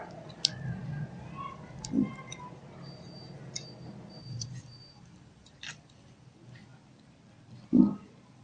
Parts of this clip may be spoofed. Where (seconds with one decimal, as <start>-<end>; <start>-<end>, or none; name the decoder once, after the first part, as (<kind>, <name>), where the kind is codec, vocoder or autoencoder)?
0.0-0.8 (vocoder, BigVGAN v2); 1.5-2.1; 4.1-6.7